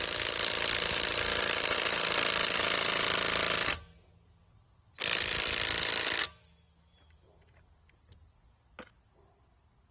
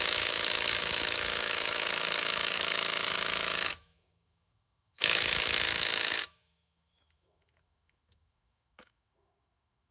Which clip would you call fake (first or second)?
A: second